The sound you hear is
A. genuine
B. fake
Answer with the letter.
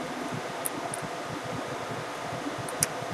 A